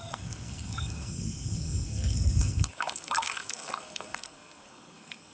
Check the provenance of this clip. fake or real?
fake